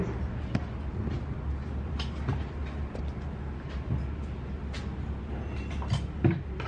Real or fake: real